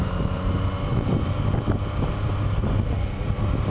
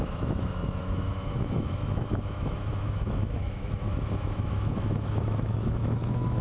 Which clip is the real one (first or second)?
first